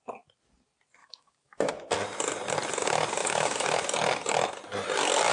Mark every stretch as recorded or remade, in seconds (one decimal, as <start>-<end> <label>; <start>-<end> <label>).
0.0-1.0 recorded; 1.0-1.7 remade; 1.7-3.2 recorded; 3.2-3.8 remade; 3.8-5.3 recorded